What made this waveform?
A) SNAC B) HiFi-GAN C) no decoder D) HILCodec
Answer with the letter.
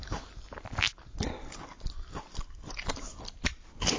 C